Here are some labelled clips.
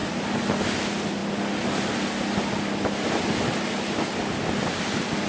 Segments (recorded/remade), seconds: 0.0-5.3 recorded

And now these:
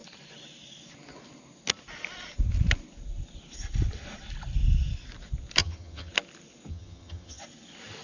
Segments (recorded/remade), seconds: 0.0-5.6 recorded; 5.6-6.1 remade; 6.1-6.7 recorded; 6.7-7.4 remade; 7.4-8.0 recorded

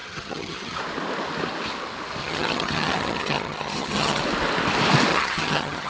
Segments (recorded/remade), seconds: 0.0-0.8 remade; 0.8-2.2 recorded; 2.2-4.2 remade; 4.2-5.1 recorded; 5.1-5.9 remade

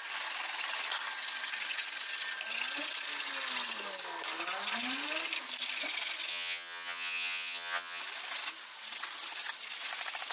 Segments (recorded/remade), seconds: 0.0-6.3 recorded; 6.3-8.0 remade; 8.0-10.3 recorded

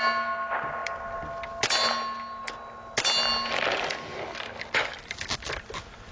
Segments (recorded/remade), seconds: 0.0-6.1 recorded

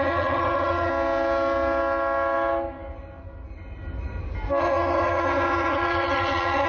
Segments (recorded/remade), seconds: 0.0-0.9 remade; 0.9-4.6 recorded; 4.6-6.7 remade

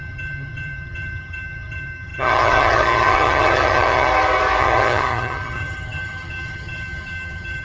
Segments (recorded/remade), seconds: 0.0-4.1 remade; 4.1-4.6 recorded; 4.6-7.6 remade

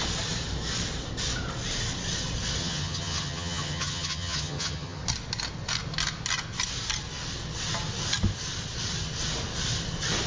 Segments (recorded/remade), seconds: 0.0-2.6 recorded; 2.6-5.0 remade; 5.0-10.3 recorded